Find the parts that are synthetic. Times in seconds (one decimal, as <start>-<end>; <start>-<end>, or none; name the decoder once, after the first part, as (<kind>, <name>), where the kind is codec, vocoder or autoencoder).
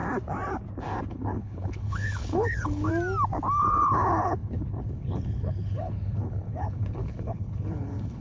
1.1-2.9 (codec, HILCodec); 3.6-8.2